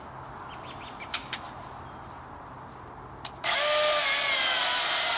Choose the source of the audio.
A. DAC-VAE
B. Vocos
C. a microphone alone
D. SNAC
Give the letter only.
C